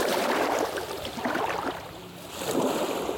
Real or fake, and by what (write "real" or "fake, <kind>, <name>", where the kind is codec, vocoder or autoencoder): real